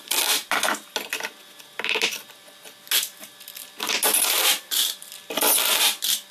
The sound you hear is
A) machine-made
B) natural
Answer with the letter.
B